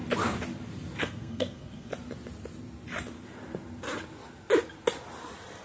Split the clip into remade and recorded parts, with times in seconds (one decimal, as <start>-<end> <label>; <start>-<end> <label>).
0.0-1.0 recorded; 1.0-1.9 remade; 1.9-5.6 recorded